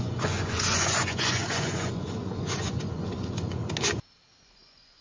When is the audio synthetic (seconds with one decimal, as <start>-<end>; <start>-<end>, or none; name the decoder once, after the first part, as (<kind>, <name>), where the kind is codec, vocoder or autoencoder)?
0.0-3.6 (vocoder, Vocos); 4.4-5.0